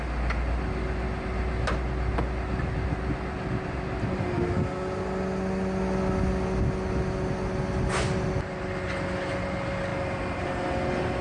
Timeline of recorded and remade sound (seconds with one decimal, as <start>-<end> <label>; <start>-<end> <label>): 0.0-11.2 recorded